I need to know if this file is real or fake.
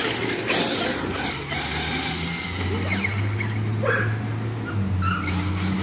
real